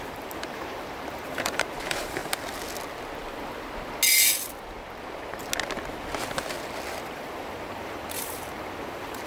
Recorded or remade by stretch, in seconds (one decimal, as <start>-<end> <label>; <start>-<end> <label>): 0.0-2.2 remade; 2.2-6.9 recorded; 6.9-9.3 remade